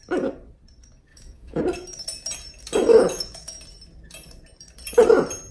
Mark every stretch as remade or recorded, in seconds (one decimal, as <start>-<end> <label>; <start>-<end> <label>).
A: 0.0-1.1 recorded; 1.1-1.6 remade; 1.6-2.9 recorded; 2.9-3.6 remade; 3.6-5.5 recorded